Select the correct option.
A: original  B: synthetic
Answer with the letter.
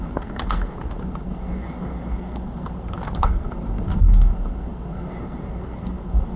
B